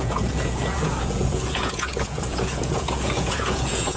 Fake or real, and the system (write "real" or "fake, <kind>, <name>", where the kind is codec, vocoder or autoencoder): fake, vocoder, Vocos